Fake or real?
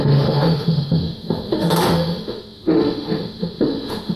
fake